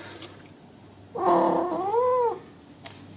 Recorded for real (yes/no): yes